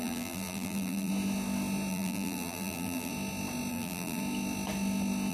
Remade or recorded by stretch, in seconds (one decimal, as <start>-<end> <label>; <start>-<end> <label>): 0.0-1.1 remade; 1.1-1.9 recorded; 1.9-3.1 remade; 3.1-3.7 recorded; 3.7-4.2 remade; 4.2-5.3 recorded